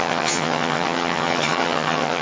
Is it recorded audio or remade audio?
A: remade